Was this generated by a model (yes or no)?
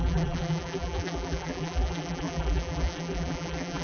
yes